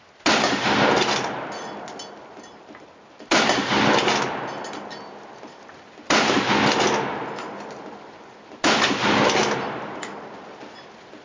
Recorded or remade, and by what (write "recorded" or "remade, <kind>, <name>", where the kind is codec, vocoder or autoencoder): recorded